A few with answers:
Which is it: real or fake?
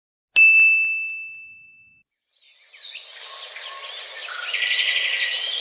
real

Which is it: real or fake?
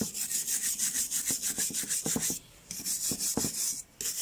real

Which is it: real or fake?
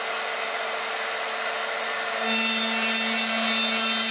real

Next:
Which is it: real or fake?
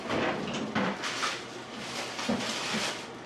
real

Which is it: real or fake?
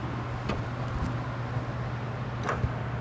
real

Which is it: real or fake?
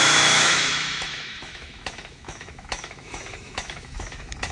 fake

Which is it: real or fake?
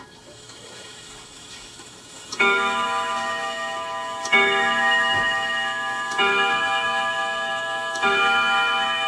fake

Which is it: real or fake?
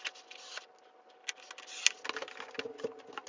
real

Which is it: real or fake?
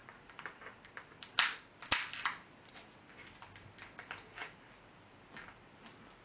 real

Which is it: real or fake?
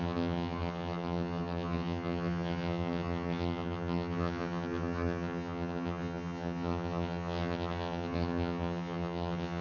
fake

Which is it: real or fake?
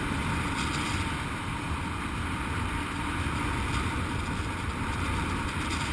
real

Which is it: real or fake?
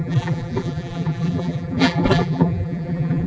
fake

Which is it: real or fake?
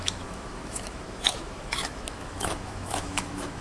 fake